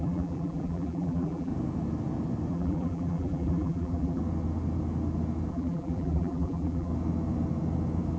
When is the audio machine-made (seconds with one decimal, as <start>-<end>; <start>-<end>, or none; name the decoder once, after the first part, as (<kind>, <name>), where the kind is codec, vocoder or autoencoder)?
0.0-1.5 (vocoder, BigVGAN v2); 2.5-4.2; 5.5-6.9